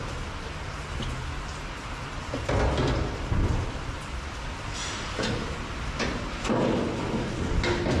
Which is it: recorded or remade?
recorded